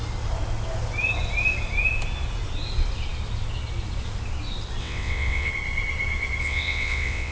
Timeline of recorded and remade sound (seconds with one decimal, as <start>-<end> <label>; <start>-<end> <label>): 0.0-4.8 recorded; 4.8-5.5 remade; 5.5-6.4 recorded; 6.4-7.3 remade